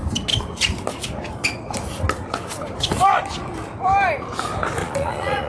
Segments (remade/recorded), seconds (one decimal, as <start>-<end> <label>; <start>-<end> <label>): 0.0-4.8 recorded; 4.8-5.5 remade